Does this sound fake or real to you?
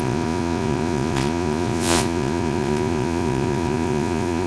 fake